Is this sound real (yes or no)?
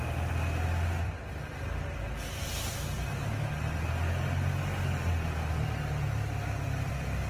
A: yes